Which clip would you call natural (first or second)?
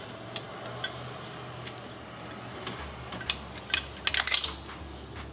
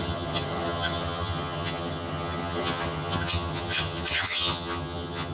first